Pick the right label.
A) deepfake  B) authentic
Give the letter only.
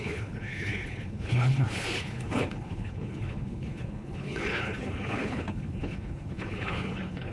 A